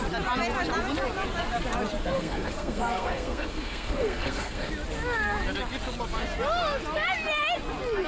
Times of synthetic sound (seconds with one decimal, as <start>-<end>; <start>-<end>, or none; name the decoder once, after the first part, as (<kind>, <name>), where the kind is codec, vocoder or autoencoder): 2.0-4.7 (codec, SNAC)